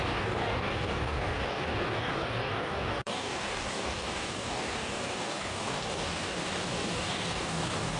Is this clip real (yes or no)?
no